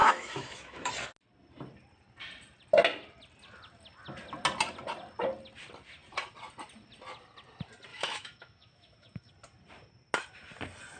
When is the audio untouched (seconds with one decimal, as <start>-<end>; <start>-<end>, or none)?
0.9-7.9; 9.3-11.0